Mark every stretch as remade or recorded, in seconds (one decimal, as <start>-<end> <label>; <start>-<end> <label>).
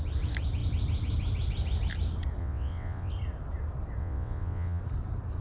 0.0-2.4 recorded; 2.4-3.1 remade; 3.1-4.0 recorded; 4.0-4.8 remade; 4.8-5.4 recorded